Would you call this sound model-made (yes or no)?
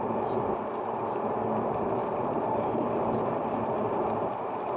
yes